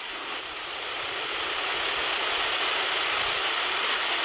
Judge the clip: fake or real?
fake